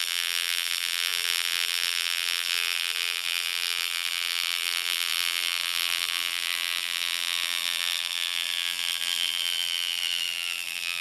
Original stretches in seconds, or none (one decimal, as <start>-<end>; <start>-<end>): none